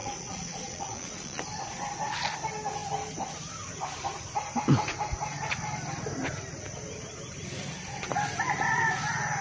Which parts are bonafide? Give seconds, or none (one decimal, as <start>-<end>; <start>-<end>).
1.4-9.4

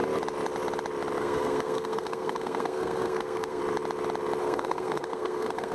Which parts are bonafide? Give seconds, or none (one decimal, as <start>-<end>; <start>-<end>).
0.0-1.2; 3.6-4.4